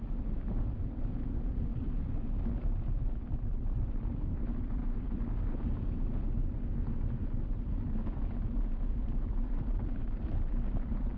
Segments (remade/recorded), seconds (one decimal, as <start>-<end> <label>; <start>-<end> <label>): 0.0-1.7 remade; 1.7-2.4 recorded; 2.4-4.8 remade; 4.8-8.9 recorded; 8.9-11.2 remade